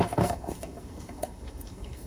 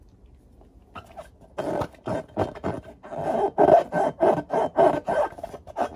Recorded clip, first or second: second